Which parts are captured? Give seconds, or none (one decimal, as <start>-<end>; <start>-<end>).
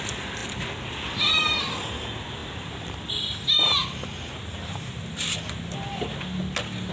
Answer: 0.0-6.9